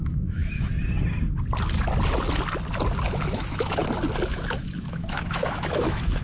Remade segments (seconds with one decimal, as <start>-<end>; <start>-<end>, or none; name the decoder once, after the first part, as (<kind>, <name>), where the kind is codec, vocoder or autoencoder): 0.0-0.7 (autoencoder, DAC-VAE); 3.1-3.8; 4.3-6.2